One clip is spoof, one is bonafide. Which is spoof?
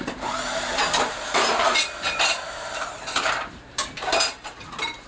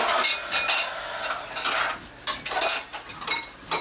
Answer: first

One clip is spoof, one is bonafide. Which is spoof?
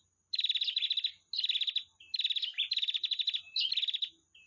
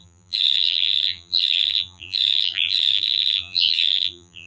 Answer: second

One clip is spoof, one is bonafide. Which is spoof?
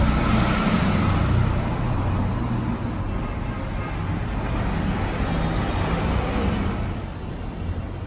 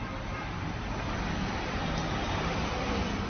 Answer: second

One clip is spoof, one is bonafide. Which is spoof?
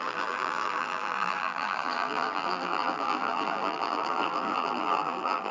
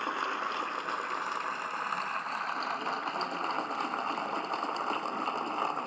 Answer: first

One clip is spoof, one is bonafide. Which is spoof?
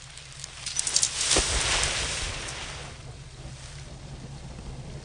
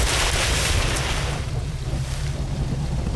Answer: second